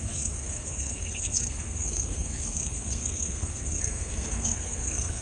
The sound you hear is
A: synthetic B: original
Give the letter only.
A